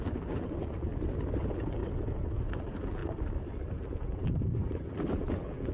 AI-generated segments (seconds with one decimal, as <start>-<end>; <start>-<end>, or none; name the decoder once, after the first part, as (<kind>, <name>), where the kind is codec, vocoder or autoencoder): 0.0-0.9 (vocoder, BigVGAN v2); 1.4-1.8; 2.6-3.0; 3.7-5.7

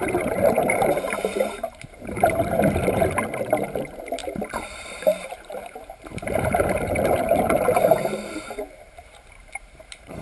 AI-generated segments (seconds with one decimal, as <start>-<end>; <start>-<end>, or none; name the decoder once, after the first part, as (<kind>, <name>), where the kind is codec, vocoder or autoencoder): 0.0-4.2 (vocoder, BigVGAN v2); 4.9-10.2